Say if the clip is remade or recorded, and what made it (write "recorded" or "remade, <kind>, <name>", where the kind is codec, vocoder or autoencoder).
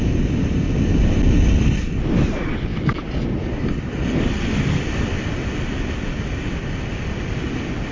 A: recorded